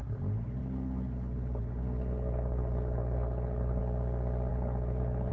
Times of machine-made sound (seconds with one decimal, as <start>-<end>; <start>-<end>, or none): 0.6-3.8; 4.5-5.3